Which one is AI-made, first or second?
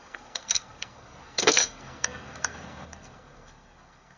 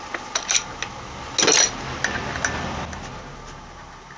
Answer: first